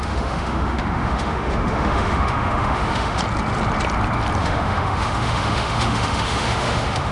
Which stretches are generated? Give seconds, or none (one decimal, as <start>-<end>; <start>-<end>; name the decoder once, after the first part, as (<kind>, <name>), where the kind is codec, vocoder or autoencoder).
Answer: 0.0-3.2 (autoencoder, DAC-VAE); 4.4-7.1